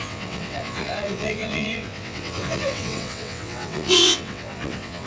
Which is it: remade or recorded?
remade